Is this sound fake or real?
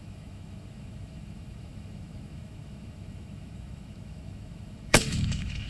fake